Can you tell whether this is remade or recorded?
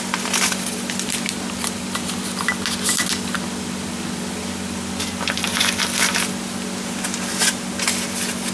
recorded